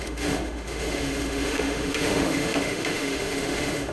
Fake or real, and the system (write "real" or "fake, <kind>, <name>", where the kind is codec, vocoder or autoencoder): fake, autoencoder, DAC-VAE